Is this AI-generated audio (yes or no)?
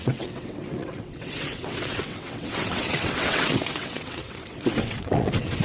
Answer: yes